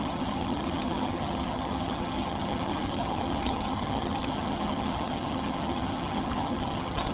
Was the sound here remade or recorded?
remade